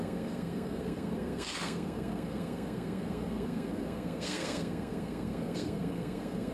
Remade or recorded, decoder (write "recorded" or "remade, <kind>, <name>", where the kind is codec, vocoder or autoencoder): remade, codec, SNAC